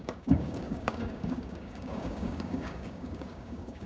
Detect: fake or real fake